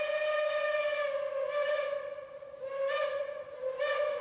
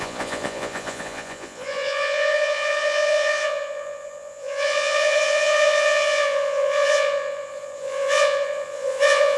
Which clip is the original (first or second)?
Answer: first